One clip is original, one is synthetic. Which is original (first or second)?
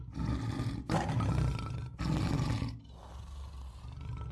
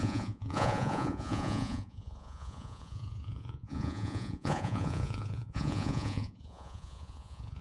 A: first